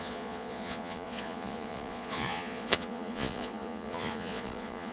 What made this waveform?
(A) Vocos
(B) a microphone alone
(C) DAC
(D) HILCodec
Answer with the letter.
A